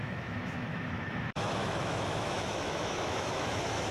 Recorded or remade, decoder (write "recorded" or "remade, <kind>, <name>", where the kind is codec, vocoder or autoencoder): remade, autoencoder, DAC-VAE